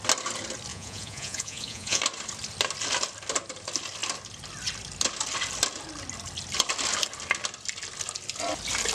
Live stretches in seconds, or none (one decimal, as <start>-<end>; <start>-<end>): 0.0-0.7; 2.0-8.9